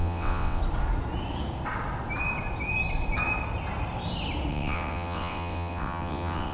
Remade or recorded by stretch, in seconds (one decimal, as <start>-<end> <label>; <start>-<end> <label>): 0.0-0.6 remade; 0.6-4.5 recorded; 4.5-6.5 remade